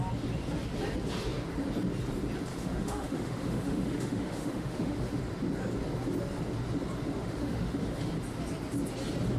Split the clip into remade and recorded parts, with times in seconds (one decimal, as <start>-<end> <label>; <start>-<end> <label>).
0.0-2.5 recorded; 2.5-5.2 remade; 5.2-7.2 recorded; 7.2-8.1 remade; 8.1-9.4 recorded